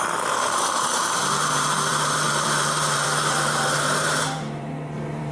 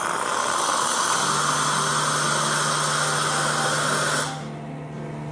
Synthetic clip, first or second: first